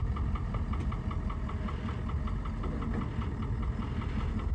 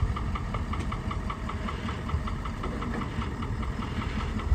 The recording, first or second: first